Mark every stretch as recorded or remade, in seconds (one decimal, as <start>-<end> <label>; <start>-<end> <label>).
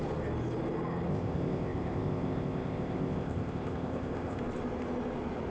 0.0-1.1 recorded; 1.1-4.4 remade; 4.4-5.5 recorded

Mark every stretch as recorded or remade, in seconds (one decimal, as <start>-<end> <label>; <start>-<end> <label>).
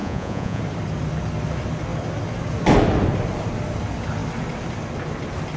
0.0-0.6 remade; 0.6-5.6 recorded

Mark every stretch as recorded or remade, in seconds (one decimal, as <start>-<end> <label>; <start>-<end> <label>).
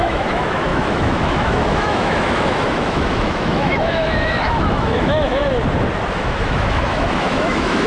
0.0-5.4 remade; 5.4-6.1 recorded; 6.1-7.9 remade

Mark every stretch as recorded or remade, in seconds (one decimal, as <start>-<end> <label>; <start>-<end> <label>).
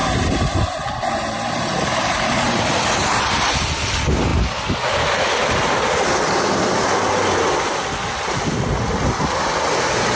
0.0-3.2 remade; 3.2-10.1 recorded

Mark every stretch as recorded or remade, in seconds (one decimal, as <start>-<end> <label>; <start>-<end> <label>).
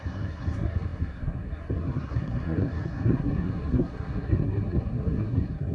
0.0-5.7 remade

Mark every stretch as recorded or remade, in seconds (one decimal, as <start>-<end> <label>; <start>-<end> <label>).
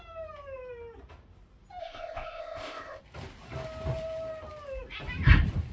0.0-1.8 recorded; 1.8-3.0 remade; 3.0-5.7 recorded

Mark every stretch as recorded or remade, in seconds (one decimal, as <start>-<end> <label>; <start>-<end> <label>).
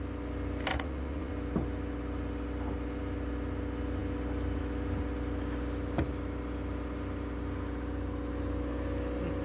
0.0-0.7 recorded; 0.7-1.3 remade; 1.3-9.4 recorded